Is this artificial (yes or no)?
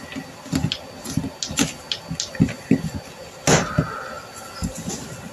no